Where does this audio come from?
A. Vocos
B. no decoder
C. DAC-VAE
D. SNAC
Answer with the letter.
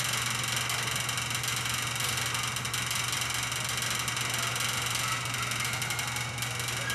B